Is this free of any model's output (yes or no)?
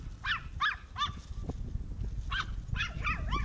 yes